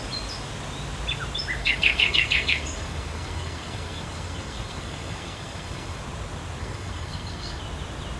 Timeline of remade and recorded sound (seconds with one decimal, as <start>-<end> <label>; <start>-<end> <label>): 0.0-1.6 recorded; 1.6-6.0 remade; 6.0-6.6 recorded; 6.6-7.6 remade; 7.6-8.2 recorded